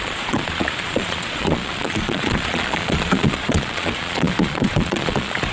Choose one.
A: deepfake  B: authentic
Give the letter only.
A